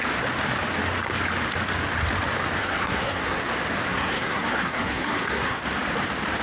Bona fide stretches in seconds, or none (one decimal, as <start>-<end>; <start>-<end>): 0.0-2.6; 3.4-3.9; 5.6-6.4